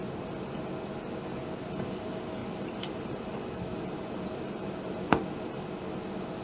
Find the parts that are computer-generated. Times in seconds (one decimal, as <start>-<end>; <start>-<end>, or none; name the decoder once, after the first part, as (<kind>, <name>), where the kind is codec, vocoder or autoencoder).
2.4-5.1 (vocoder, BigVGAN v2)